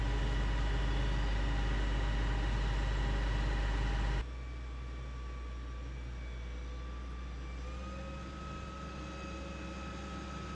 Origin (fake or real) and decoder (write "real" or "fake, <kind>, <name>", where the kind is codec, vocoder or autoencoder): real